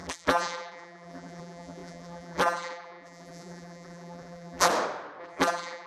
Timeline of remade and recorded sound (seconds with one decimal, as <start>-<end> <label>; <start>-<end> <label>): 0.0-4.7 remade; 4.7-5.2 recorded; 5.2-5.9 remade